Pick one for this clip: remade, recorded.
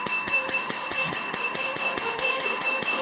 remade